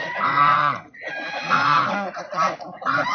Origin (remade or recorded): remade